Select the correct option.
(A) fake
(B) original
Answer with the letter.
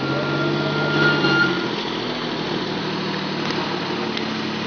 B